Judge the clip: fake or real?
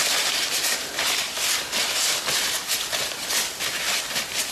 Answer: real